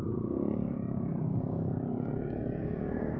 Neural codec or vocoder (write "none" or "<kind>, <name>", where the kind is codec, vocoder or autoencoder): codec, DAC